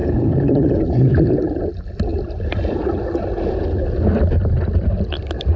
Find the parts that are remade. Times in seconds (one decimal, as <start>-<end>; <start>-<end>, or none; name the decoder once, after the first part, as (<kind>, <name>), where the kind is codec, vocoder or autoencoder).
0.0-2.1 (vocoder, BigVGAN v2); 4.2-5.6